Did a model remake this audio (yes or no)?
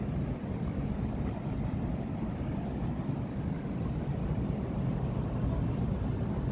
no